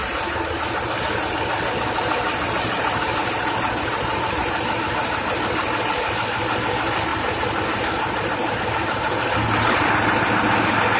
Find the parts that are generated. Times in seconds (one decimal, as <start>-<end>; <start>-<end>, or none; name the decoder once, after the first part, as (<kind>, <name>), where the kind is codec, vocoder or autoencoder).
none